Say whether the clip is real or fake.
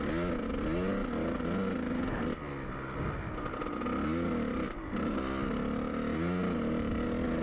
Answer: real